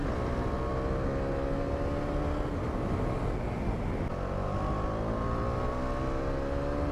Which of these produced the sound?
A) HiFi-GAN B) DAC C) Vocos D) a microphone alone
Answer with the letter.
D